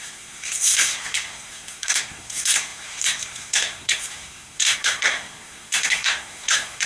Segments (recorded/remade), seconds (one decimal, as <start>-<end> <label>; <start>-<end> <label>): 0.0-6.9 remade